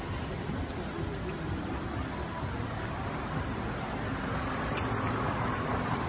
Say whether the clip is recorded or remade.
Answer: recorded